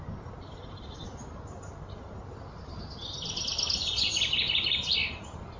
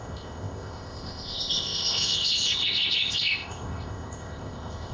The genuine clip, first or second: first